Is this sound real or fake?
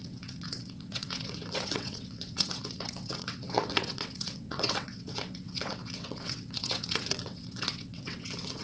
fake